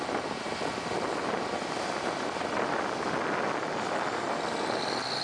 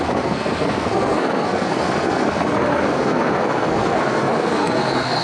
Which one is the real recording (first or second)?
first